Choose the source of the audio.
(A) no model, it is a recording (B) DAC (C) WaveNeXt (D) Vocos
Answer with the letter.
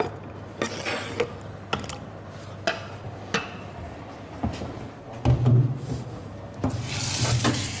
A